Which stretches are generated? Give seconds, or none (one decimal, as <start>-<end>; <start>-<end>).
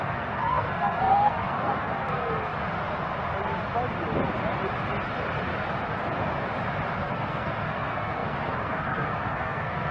0.0-2.5; 7.0-9.9